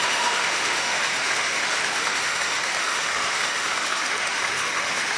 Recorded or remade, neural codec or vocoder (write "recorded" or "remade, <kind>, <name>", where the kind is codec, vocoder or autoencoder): remade, autoencoder, DAC-VAE